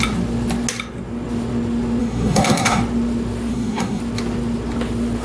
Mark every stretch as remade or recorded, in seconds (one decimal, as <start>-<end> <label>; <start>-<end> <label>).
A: 0.0-2.0 recorded; 2.0-2.8 remade; 2.8-3.5 recorded; 3.5-4.0 remade; 4.0-5.2 recorded